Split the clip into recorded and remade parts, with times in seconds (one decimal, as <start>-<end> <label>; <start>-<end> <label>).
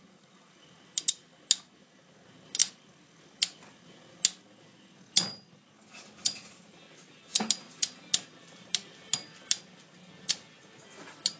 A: 0.0-11.4 recorded